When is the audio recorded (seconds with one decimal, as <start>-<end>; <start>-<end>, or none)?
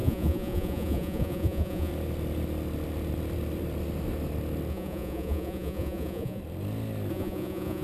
1.9-4.7; 6.4-7.1